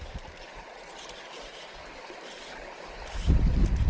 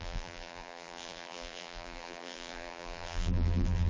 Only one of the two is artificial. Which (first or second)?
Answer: second